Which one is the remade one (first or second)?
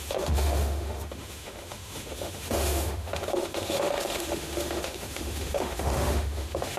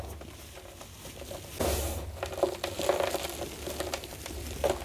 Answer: first